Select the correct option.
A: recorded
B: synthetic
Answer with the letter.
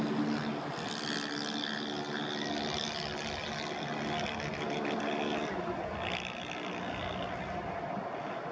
A